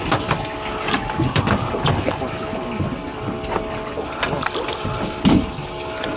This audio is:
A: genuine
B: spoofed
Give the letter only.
A